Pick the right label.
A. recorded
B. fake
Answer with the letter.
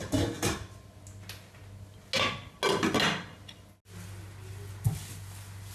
A